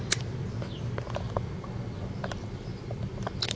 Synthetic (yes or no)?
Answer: no